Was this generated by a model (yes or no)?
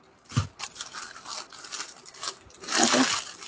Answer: no